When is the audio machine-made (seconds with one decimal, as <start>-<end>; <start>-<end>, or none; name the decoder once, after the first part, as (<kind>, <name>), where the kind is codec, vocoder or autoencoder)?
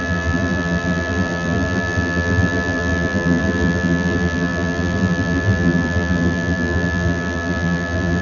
0.0-8.2 (vocoder, BigVGAN v2)